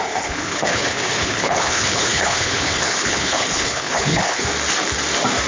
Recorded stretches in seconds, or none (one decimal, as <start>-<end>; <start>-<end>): 4.5-5.5